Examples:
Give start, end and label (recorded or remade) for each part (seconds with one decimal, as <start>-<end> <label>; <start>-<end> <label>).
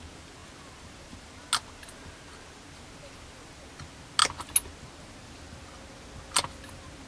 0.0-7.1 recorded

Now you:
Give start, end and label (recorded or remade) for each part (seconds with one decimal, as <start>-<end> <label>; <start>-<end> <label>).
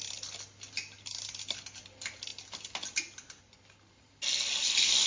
0.0-5.1 recorded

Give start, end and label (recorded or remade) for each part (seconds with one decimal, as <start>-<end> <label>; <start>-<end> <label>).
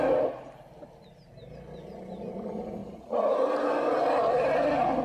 0.0-2.8 recorded; 2.8-4.0 remade; 4.0-5.0 recorded